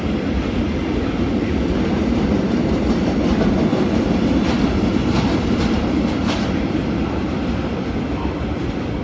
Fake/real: real